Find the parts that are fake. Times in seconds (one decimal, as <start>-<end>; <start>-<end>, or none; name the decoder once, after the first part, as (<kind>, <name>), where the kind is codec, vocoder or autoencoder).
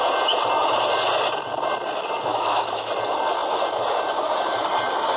2.3-2.9 (autoencoder, DAC-VAE)